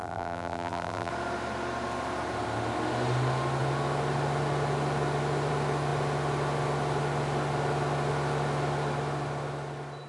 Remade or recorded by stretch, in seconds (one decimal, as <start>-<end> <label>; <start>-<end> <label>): 0.0-1.1 remade; 1.1-10.1 recorded